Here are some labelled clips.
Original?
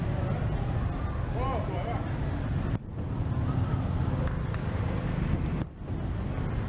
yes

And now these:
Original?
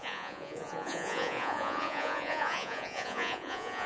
no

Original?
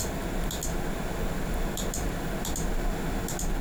yes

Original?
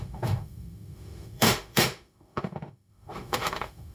no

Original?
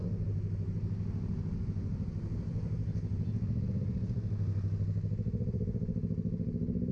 yes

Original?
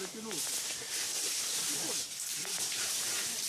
no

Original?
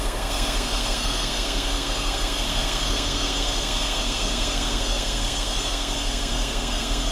no